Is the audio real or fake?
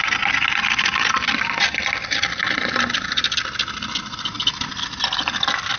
real